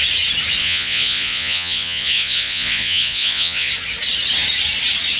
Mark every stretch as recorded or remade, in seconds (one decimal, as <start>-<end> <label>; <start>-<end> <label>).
0.0-0.6 recorded; 0.6-3.7 remade; 3.7-5.2 recorded